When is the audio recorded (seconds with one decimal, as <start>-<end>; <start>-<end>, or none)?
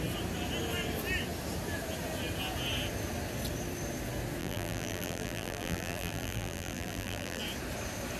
0.0-4.4; 7.4-8.2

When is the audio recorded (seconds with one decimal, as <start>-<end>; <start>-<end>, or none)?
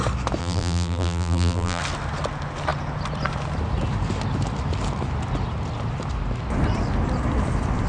0.0-0.4; 1.8-7.9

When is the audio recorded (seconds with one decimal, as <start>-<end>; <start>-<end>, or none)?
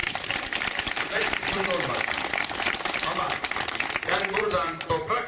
3.2-5.3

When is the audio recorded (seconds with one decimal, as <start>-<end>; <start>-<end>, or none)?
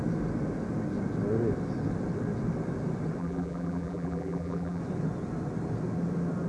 0.0-3.2; 4.8-6.5